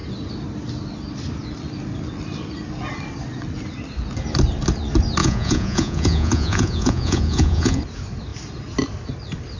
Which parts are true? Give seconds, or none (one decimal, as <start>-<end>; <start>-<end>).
0.0-5.2; 7.8-9.6